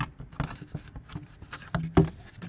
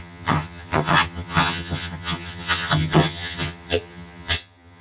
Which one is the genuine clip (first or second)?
first